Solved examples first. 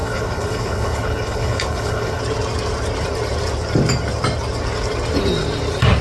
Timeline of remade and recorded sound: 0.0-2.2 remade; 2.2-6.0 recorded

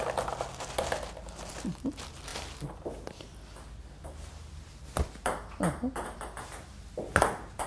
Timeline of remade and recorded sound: 0.0-7.7 recorded

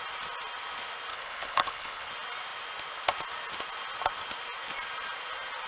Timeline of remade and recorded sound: 0.0-1.1 recorded; 1.1-2.1 remade; 2.1-5.7 recorded